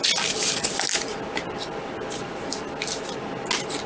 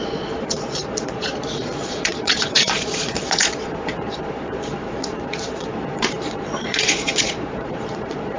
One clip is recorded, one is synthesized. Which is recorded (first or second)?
first